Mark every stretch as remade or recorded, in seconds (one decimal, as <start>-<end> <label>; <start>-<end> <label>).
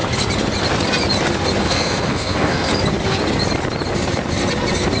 0.0-1.6 recorded; 1.6-2.7 remade; 2.7-5.0 recorded